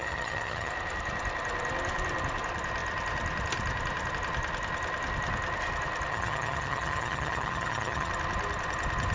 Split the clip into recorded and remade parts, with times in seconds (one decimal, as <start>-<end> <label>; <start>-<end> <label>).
0.0-0.7 remade; 0.7-6.1 recorded; 6.1-8.1 remade; 8.1-9.1 recorded